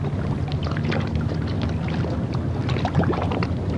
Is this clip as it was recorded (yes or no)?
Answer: yes